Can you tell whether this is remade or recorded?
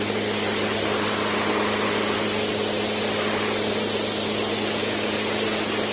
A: recorded